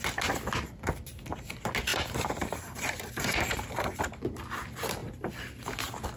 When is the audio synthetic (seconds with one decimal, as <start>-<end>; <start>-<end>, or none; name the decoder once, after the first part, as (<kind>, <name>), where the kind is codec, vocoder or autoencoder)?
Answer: 1.9-4.0 (vocoder, BigVGAN v2)